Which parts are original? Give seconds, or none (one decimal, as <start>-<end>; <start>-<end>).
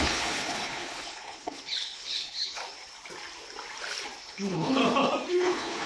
2.6-4.2; 4.8-5.3